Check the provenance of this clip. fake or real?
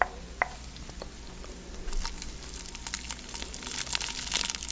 real